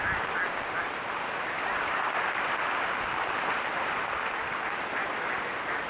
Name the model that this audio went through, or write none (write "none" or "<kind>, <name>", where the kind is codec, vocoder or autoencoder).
none